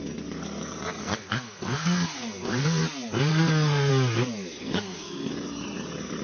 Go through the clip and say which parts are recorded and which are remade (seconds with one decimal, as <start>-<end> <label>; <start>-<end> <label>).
0.0-1.0 recorded; 1.0-2.8 remade; 2.8-3.3 recorded; 3.3-3.9 remade; 3.9-4.6 recorded; 4.6-5.3 remade; 5.3-6.2 recorded